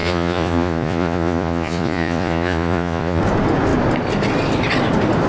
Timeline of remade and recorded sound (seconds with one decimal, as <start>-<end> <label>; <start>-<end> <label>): 0.0-3.2 remade; 3.2-5.3 recorded